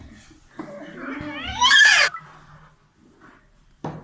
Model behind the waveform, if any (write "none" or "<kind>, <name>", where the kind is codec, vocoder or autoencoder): none